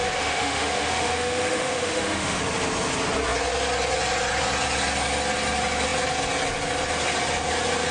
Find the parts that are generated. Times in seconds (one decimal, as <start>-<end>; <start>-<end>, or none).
0.0-2.4